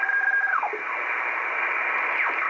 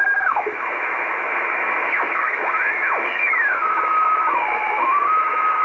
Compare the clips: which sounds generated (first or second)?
second